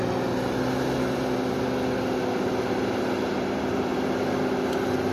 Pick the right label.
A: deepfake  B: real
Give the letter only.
B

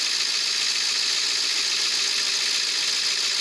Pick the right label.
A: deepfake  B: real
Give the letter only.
B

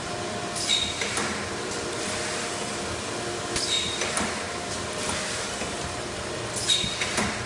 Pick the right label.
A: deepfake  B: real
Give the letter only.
A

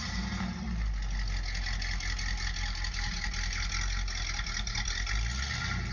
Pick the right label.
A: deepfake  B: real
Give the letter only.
B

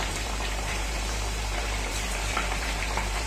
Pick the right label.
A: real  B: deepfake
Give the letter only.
B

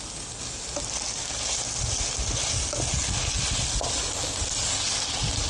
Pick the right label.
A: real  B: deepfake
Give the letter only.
A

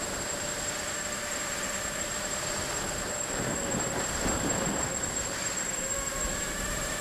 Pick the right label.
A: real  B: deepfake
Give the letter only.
B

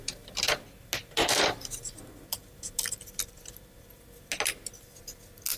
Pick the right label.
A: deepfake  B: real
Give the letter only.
B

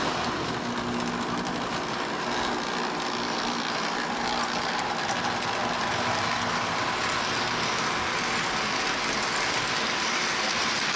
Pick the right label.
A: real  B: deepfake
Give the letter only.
A